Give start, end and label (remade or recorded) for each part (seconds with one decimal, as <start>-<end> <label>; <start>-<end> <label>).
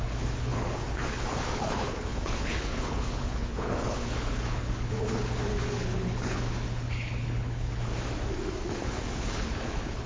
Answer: 0.0-7.9 remade; 7.9-8.7 recorded; 8.7-10.1 remade